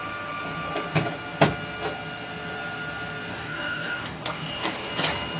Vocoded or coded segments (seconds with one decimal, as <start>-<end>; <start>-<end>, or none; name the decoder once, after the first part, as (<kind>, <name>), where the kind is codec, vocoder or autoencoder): 3.3-4.9 (codec, DAC)